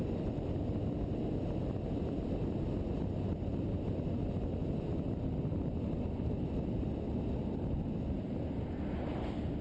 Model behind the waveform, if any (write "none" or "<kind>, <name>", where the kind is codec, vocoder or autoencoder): none